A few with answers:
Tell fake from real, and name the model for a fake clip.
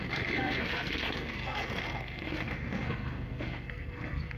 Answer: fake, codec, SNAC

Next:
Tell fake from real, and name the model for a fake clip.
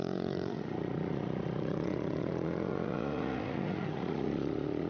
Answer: fake, vocoder, Vocos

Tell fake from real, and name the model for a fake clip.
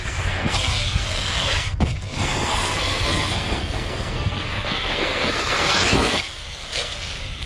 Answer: fake, codec, SNAC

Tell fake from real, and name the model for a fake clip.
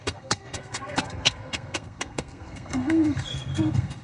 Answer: fake, codec, SNAC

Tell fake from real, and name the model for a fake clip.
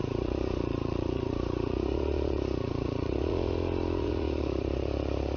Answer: fake, vocoder, Vocos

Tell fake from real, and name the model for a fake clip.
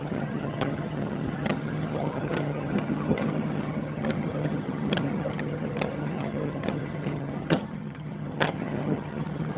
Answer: fake, vocoder, HiFi-GAN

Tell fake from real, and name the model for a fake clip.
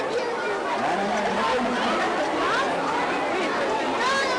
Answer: real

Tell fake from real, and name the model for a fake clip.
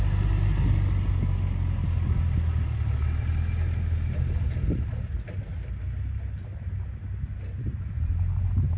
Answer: real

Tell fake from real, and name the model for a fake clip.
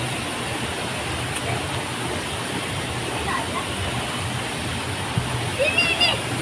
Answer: real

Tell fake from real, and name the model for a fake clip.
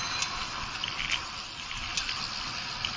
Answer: real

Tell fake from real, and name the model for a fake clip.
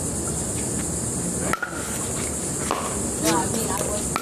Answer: real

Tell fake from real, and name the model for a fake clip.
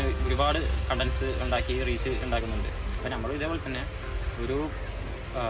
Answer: real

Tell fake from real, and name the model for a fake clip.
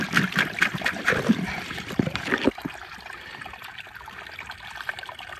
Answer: fake, vocoder, BigVGAN v2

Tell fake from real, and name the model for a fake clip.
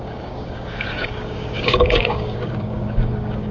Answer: fake, codec, DAC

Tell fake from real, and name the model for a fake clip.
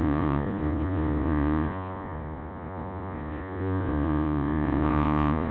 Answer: fake, vocoder, Vocos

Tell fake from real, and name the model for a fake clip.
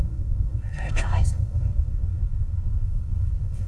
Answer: fake, codec, SNAC